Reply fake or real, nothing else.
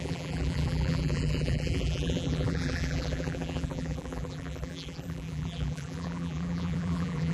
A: fake